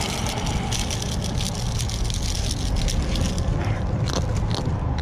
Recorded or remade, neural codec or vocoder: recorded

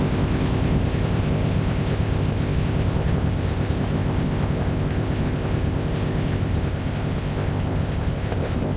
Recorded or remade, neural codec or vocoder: remade, codec, ZipCodec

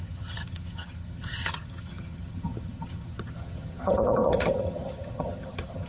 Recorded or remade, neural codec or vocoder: remade, vocoder, HiFi-GAN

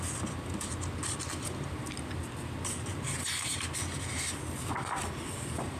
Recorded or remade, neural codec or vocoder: recorded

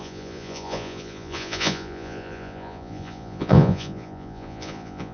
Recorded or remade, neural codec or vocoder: remade, vocoder, Vocos